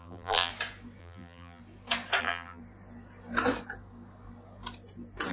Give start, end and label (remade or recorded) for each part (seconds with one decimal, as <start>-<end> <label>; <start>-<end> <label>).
0.0-0.5 remade; 0.5-1.0 recorded; 1.0-1.6 remade; 1.6-2.2 recorded; 2.2-2.6 remade; 2.6-5.3 recorded